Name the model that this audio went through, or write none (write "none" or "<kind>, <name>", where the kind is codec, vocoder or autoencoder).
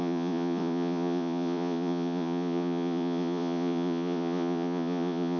vocoder, Vocos